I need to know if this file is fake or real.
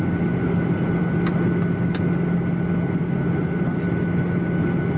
real